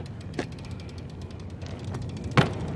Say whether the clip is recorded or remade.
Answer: recorded